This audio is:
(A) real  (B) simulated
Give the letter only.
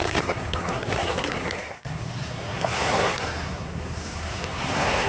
B